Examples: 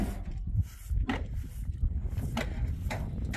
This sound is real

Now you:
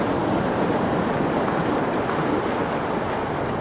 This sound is real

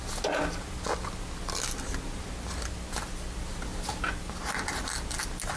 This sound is real